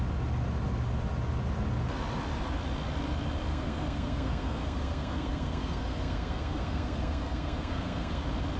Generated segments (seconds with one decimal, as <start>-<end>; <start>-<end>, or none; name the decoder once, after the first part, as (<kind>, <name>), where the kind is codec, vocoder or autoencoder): 3.5-8.2 (codec, SNAC)